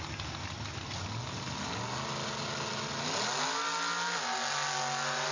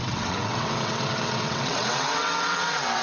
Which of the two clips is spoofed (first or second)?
second